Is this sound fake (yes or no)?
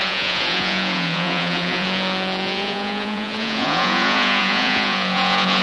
yes